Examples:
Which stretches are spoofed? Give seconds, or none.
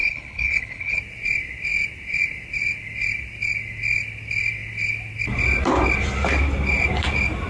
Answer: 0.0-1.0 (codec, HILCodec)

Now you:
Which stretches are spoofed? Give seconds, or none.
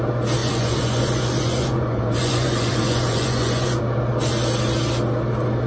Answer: 0.4-3.8 (vocoder, Vocos)